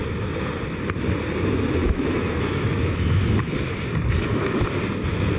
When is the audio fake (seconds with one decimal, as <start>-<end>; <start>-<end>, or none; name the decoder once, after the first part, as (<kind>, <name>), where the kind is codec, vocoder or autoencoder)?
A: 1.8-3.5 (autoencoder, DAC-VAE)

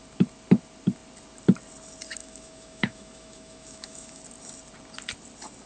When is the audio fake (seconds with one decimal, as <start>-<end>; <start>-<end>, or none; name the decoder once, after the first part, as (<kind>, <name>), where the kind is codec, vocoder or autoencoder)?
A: 2.2-4.2 (autoencoder, DAC-VAE)

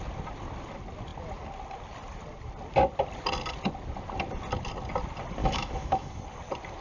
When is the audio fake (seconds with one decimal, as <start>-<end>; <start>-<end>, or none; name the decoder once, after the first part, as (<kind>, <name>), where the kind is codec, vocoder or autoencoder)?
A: 5.4-6.2 (autoencoder, DAC-VAE)